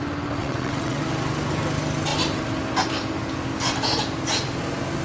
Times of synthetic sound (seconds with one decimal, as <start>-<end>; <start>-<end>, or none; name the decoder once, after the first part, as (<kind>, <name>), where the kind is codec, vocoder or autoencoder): 0.4-1.0 (vocoder, WaveNeXt)